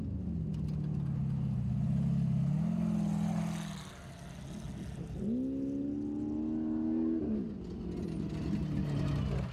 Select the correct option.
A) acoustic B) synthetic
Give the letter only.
A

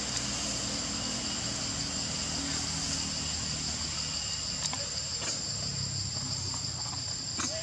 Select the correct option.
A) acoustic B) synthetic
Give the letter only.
A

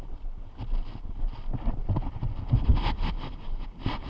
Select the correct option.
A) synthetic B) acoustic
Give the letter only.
B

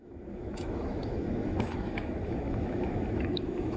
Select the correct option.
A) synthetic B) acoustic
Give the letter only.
A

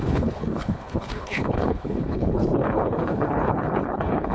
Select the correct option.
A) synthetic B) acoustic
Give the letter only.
A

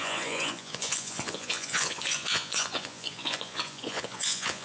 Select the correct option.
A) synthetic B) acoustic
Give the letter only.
A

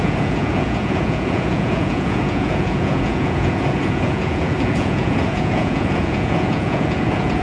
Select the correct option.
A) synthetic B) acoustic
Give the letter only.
A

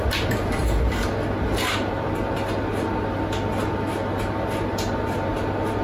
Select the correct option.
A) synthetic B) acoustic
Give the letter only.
B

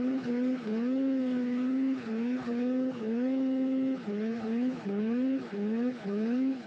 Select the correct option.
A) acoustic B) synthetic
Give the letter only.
B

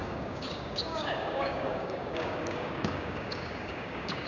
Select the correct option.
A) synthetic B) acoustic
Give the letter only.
A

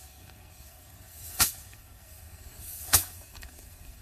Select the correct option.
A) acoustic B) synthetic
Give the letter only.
B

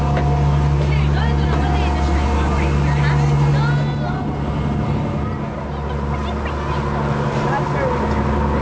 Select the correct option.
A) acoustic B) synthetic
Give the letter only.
A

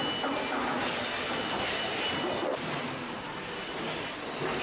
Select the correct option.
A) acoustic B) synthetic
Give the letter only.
A